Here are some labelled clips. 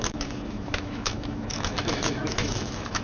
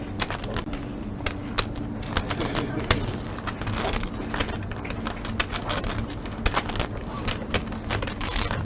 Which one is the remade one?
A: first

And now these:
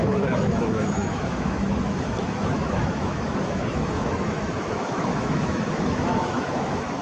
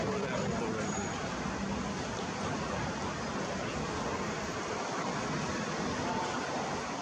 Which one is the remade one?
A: first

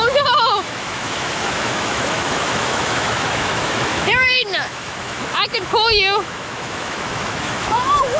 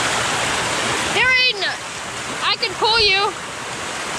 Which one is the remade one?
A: first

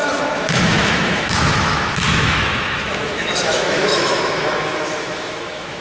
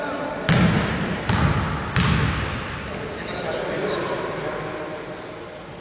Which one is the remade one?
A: first